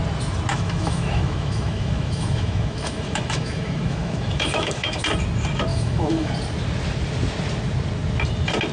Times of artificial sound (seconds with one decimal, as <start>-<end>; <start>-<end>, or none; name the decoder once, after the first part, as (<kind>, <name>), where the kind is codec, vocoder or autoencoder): 0.5-5.0 (autoencoder, DAC-VAE); 5.7-6.3